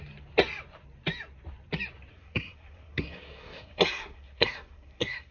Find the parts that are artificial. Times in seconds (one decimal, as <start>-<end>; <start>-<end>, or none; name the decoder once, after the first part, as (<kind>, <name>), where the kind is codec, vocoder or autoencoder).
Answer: 2.1-5.3 (codec, SNAC)